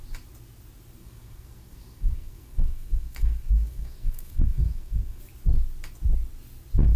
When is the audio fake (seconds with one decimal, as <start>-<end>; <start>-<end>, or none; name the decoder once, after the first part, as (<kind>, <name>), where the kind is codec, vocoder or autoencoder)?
1.0-5.2 (codec, SNAC)